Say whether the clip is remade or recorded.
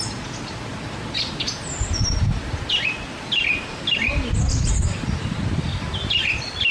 recorded